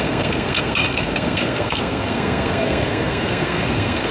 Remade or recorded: remade